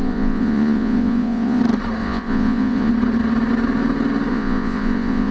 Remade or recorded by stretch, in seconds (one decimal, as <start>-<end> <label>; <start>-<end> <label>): 0.0-1.6 remade; 1.6-2.0 recorded; 2.0-2.9 remade; 2.9-4.3 recorded; 4.3-5.3 remade

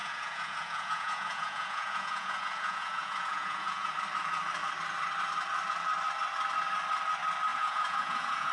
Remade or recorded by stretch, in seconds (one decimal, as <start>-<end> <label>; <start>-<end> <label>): 0.0-3.9 remade; 3.9-7.5 recorded; 7.5-8.5 remade

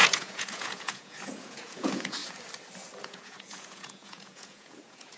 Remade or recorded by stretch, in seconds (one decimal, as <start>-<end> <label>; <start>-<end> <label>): 0.0-2.2 remade; 2.2-3.0 recorded; 3.0-5.2 remade

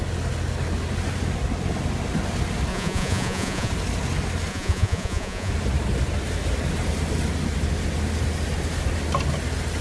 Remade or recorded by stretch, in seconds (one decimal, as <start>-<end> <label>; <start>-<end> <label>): 0.0-2.7 recorded; 2.7-3.7 remade; 3.7-4.5 recorded; 4.5-5.5 remade; 5.5-9.8 recorded

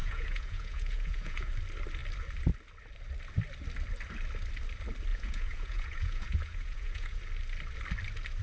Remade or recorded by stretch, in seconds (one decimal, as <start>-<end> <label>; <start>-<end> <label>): 0.0-1.5 remade; 1.5-5.1 recorded; 5.1-7.2 remade; 7.2-8.4 recorded

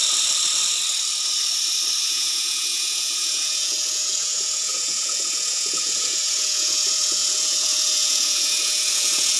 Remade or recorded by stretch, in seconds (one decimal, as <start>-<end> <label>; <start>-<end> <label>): 0.0-2.0 recorded; 2.0-9.4 remade

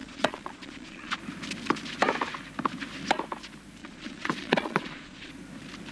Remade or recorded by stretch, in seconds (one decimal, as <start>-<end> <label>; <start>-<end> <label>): 0.0-1.2 remade; 1.2-3.8 recorded; 3.8-5.3 remade; 5.3-5.9 recorded

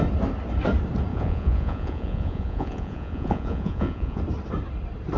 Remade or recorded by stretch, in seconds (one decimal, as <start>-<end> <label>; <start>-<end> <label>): 0.0-1.1 recorded; 1.1-4.2 remade; 4.2-5.2 recorded